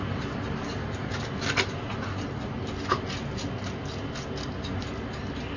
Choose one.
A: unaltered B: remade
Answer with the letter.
A